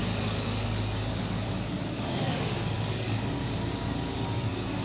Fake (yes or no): yes